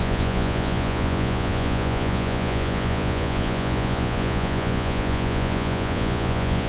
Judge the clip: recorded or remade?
remade